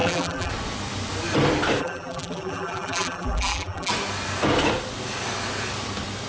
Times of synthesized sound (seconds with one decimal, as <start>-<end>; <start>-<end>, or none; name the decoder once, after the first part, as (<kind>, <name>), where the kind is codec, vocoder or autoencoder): 0.0-0.5 (vocoder, BigVGAN v2); 1.8-3.9